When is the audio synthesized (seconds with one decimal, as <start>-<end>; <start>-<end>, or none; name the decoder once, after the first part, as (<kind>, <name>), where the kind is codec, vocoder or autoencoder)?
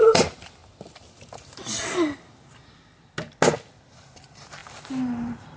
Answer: 0.0-0.6 (vocoder, BigVGAN v2); 4.0-5.6